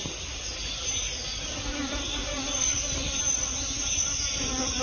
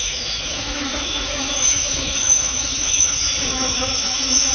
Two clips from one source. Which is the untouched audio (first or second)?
first